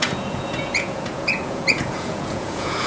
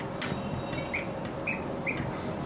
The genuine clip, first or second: second